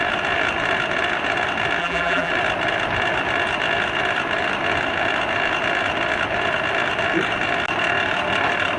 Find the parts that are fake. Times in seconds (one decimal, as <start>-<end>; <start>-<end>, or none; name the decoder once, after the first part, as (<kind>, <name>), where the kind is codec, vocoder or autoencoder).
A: 1.8-2.3 (vocoder, BigVGAN v2)